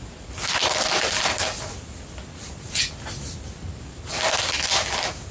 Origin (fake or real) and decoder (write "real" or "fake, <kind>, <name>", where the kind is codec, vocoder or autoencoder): real